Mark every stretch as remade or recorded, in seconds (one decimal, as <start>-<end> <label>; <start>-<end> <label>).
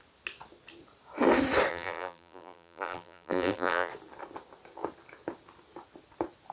0.0-1.7 recorded; 1.7-3.9 remade; 3.9-6.5 recorded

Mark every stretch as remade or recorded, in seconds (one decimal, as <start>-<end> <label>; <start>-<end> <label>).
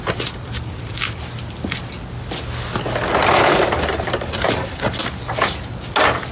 0.0-3.2 recorded; 3.2-4.8 remade; 4.8-6.3 recorded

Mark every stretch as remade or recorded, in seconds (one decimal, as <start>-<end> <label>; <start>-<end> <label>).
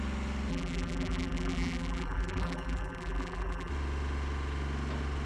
0.0-0.5 recorded; 0.5-3.7 remade; 3.7-5.3 recorded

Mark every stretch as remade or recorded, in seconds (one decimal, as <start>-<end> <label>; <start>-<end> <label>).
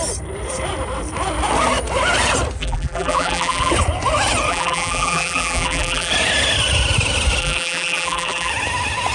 0.0-2.6 recorded; 2.6-3.7 remade; 3.7-4.5 recorded; 4.5-6.1 remade; 6.1-7.4 recorded; 7.4-8.5 remade; 8.5-9.1 recorded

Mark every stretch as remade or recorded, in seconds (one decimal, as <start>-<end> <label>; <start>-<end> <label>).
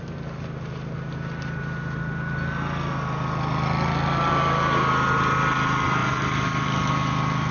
0.0-6.0 recorded; 6.0-6.9 remade; 6.9-7.5 recorded